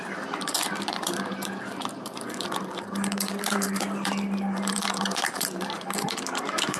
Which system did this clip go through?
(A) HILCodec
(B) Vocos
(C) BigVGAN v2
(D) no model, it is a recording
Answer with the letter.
C